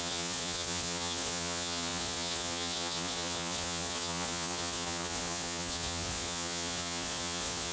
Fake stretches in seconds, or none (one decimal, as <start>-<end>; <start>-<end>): 0.0-7.7